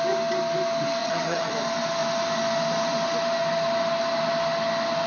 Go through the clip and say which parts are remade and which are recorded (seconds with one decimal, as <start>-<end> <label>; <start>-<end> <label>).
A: 0.0-1.0 recorded; 1.0-1.5 remade; 1.5-5.1 recorded